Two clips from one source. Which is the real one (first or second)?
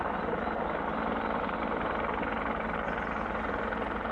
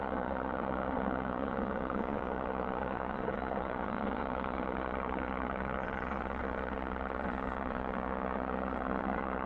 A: first